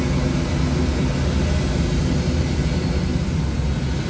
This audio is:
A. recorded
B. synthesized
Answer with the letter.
A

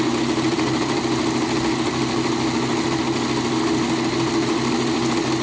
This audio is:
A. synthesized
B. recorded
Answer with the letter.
B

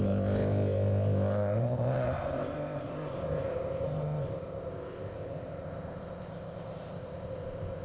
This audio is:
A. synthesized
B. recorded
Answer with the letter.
A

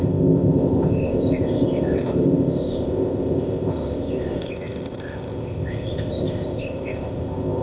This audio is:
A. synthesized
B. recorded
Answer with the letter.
A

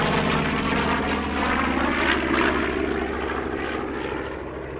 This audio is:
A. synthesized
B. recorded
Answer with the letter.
B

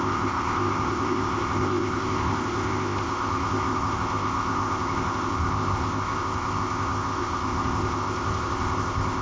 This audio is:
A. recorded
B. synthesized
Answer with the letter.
B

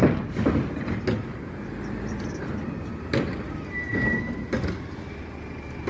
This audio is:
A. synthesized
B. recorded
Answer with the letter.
B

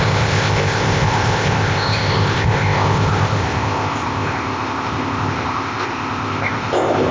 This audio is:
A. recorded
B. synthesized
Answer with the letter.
B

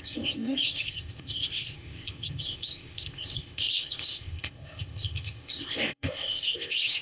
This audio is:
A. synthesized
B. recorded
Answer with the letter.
A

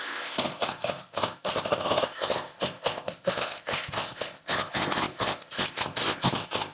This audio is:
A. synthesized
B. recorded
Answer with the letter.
A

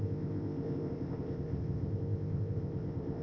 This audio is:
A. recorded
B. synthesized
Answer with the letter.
B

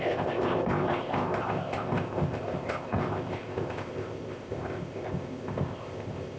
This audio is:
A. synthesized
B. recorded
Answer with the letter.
A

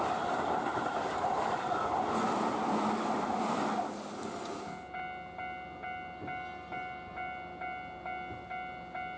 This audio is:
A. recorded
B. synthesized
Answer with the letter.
A